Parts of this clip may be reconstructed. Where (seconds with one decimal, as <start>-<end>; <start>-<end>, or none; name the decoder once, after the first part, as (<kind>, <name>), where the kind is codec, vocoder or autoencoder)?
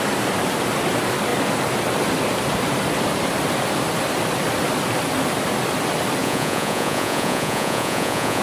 6.2-8.4 (vocoder, Vocos)